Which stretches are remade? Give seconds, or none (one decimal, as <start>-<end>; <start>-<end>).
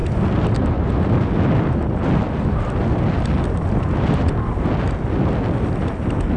none